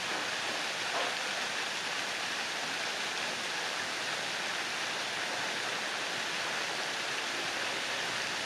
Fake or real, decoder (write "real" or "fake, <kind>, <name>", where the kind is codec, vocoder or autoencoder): real